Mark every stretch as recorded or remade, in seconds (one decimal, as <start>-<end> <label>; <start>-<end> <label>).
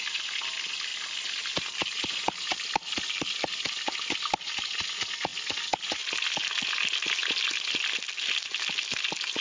0.0-9.4 recorded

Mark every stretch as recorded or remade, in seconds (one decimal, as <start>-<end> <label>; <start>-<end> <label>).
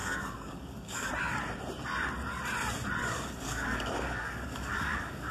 0.0-1.1 remade; 1.1-3.0 recorded; 3.0-5.3 remade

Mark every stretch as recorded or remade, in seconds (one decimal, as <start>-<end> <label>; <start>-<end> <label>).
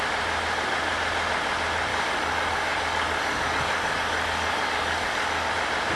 0.0-1.9 recorded; 1.9-5.5 remade; 5.5-6.0 recorded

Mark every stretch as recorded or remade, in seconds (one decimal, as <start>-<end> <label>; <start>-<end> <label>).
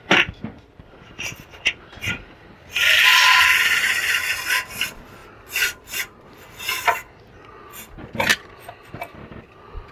0.0-9.9 recorded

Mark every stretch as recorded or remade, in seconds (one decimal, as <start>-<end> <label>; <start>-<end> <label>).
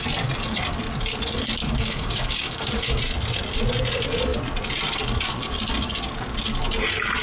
0.0-1.6 recorded; 1.6-3.0 remade; 3.0-7.2 recorded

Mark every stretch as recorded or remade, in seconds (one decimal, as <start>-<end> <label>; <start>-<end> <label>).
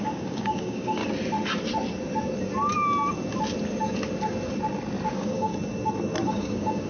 0.0-1.0 remade; 1.0-5.1 recorded; 5.1-5.5 remade; 5.5-6.3 recorded; 6.3-6.9 remade